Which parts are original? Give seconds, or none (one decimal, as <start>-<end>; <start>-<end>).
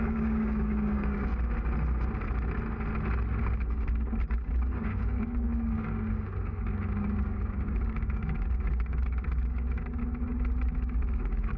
1.3-3.4; 10.0-10.6